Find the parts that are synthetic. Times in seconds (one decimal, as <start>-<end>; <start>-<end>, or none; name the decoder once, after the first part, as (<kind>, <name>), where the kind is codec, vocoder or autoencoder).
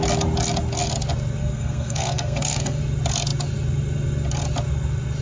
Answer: 1.4-2.8 (codec, SNAC)